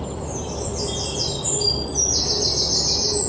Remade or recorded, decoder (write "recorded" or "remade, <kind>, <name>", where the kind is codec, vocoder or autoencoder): recorded